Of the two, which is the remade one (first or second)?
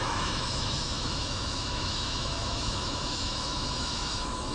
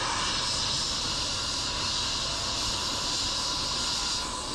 first